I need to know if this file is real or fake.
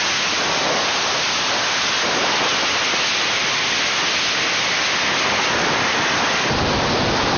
real